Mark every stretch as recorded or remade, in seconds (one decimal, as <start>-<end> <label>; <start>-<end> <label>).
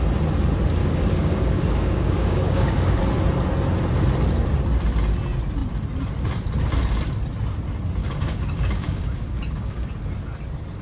0.0-0.8 recorded; 0.8-3.0 remade; 3.0-8.0 recorded; 8.0-9.9 remade; 9.9-10.8 recorded